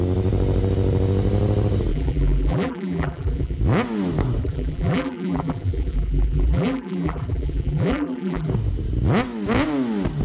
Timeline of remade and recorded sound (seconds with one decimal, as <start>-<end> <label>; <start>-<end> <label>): 0.0-1.9 recorded; 1.9-3.6 remade; 3.6-4.4 recorded; 4.4-8.5 remade; 8.5-10.2 recorded